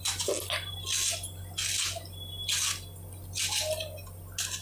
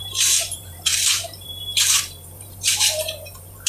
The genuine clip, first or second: first